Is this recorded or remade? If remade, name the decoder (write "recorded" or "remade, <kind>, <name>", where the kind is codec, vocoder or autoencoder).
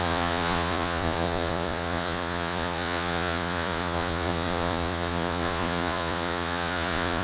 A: remade, vocoder, Vocos